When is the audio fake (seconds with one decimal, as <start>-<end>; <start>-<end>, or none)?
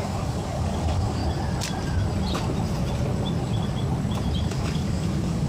0.0-1.2; 4.5-5.5